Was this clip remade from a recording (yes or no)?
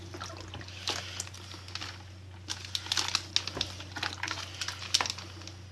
no